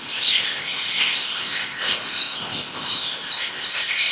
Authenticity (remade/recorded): remade